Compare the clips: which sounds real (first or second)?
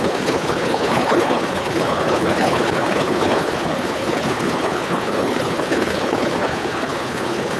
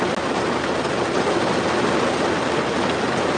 second